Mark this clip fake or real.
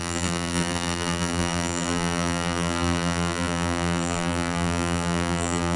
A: fake